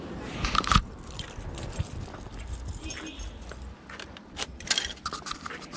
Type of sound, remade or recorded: recorded